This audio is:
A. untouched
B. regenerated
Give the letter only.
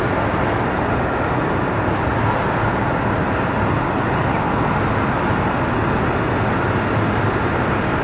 A